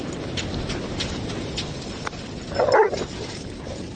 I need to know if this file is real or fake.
real